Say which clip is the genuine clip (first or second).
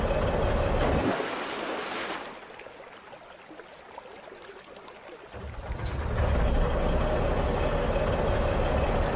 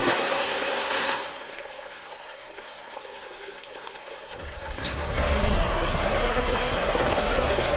first